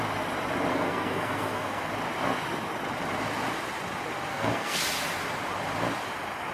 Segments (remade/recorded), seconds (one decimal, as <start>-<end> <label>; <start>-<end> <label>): 0.0-0.7 recorded; 0.7-1.9 remade; 1.9-4.3 recorded; 4.3-4.8 remade; 4.8-6.5 recorded